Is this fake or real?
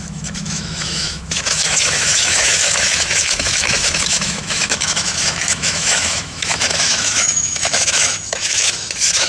fake